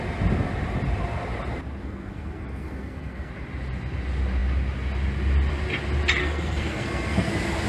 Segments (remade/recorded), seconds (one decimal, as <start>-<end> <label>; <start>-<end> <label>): 0.0-1.8 recorded; 1.8-3.3 remade; 3.3-6.2 recorded; 6.2-7.3 remade; 7.3-7.7 recorded